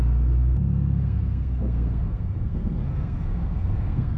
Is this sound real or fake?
fake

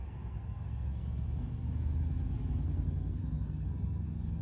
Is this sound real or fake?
fake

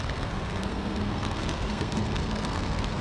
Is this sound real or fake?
fake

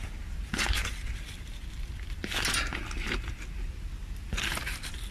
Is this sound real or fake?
real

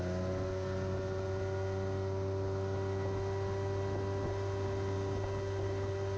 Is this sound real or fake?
real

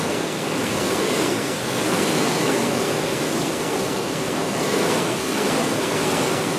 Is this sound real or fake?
fake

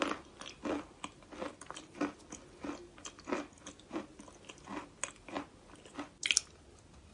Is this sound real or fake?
real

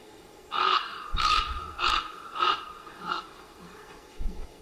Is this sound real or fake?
fake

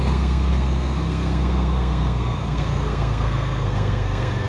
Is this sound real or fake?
fake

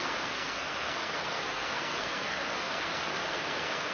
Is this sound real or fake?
fake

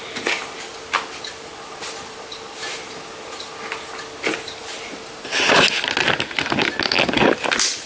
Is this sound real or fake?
real